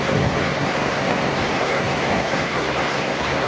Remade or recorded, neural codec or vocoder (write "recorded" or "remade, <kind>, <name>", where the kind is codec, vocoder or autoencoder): remade, codec, SNAC